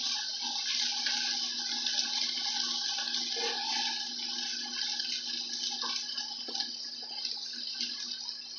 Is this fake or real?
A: real